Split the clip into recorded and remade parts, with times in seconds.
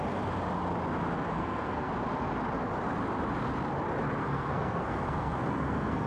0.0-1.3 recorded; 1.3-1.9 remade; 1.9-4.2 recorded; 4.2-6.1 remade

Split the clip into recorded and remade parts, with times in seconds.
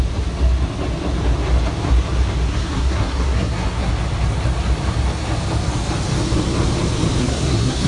0.0-2.5 recorded; 2.5-3.9 remade; 3.9-7.2 recorded; 7.2-7.9 remade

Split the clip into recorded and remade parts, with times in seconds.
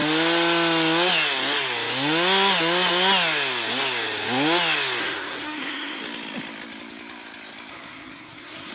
0.0-5.0 recorded; 5.0-6.0 remade; 6.0-7.7 recorded; 7.7-8.7 remade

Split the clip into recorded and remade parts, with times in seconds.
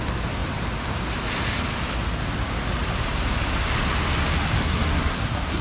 0.0-4.6 recorded; 4.6-5.6 remade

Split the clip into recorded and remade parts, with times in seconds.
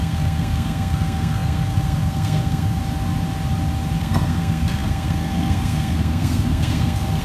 0.0-2.8 remade; 2.8-4.0 recorded; 4.0-7.2 remade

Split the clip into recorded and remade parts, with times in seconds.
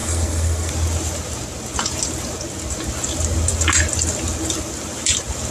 0.0-0.7 remade; 0.7-5.5 recorded